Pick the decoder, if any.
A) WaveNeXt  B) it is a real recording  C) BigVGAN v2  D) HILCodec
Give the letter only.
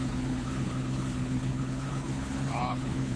D